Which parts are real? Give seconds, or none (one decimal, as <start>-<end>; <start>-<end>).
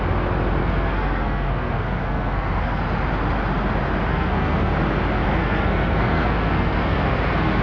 0.0-0.6; 2.8-4.1; 4.7-5.4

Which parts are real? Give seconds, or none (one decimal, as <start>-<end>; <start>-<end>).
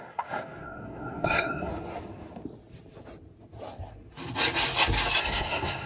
1.7-5.2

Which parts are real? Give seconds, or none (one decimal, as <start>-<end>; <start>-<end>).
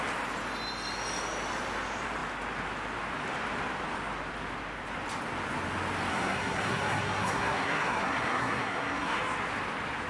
0.0-6.1; 9.2-10.1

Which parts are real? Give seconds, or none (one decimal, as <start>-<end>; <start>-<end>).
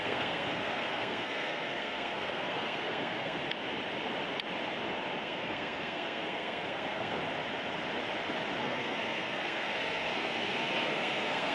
3.4-5.2; 7.2-8.6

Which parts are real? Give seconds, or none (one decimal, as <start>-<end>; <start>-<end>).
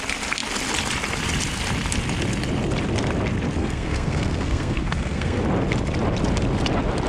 0.0-3.6; 5.4-7.1